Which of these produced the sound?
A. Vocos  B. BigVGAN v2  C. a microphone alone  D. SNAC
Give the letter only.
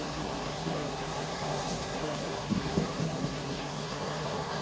D